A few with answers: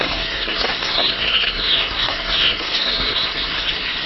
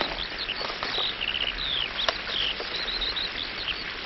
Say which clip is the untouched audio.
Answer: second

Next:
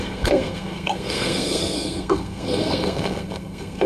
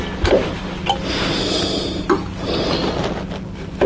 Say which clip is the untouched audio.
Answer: second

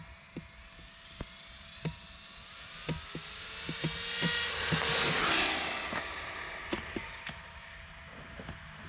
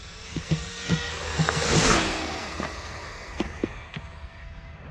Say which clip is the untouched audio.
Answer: first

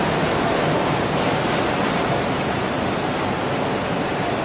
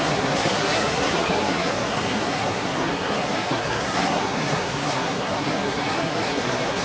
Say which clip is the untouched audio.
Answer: first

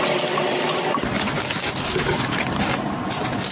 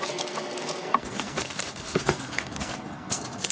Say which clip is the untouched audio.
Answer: first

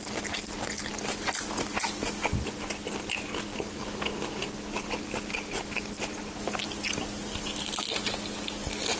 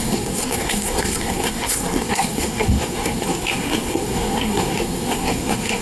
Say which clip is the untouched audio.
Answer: first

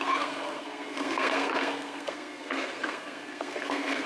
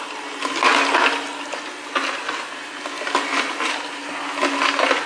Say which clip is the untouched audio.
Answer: second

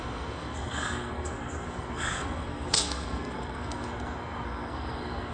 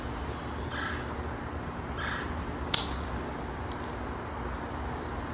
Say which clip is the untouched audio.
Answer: second